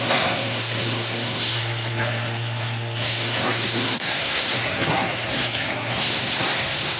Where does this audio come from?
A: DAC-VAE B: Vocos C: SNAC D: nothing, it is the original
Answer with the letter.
C